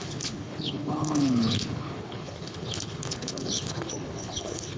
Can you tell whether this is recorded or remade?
remade